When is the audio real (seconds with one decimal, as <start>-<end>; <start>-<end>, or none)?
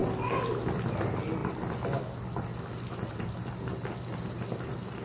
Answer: 0.0-5.0